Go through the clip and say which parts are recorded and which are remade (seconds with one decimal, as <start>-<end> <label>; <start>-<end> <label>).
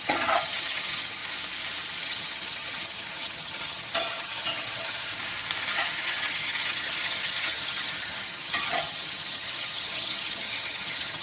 0.0-1.2 remade; 1.2-2.0 recorded; 2.0-5.1 remade; 5.1-5.7 recorded; 5.7-11.2 remade